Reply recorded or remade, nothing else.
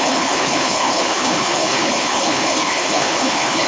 remade